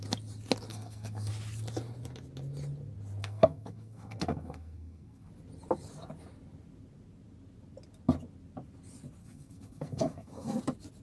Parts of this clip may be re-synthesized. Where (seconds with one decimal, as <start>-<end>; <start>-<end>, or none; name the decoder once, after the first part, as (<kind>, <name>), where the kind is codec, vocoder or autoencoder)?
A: 0.7-1.3 (codec, SNAC); 3.2-5.3; 9.2-10.6